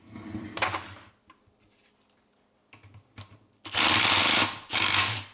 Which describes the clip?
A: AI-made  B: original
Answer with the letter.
B